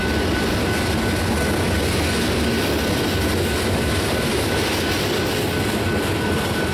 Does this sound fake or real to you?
real